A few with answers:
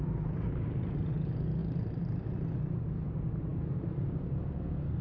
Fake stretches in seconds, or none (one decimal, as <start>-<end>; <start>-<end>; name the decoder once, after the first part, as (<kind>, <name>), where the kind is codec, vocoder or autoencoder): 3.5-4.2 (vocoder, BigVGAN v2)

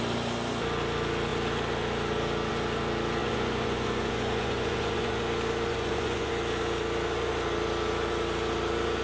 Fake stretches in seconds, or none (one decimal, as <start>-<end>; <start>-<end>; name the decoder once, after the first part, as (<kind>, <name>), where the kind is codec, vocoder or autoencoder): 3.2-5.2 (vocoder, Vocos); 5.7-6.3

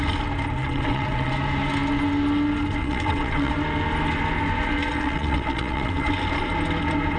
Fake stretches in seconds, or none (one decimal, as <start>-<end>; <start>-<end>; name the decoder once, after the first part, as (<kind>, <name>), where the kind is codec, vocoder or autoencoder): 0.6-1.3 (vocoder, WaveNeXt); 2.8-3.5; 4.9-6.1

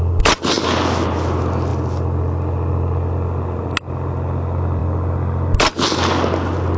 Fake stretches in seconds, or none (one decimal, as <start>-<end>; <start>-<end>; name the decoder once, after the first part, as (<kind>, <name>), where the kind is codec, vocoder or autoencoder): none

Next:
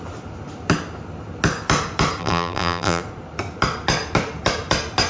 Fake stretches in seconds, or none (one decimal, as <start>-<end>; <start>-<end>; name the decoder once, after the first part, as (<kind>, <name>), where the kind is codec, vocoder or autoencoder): 2.2-3.0 (vocoder, BigVGAN v2)

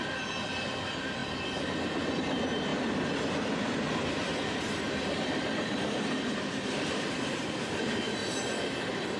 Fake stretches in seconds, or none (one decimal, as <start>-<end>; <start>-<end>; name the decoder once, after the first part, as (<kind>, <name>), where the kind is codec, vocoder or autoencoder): 2.7-7.5 (vocoder, BigVGAN v2); 8.2-9.2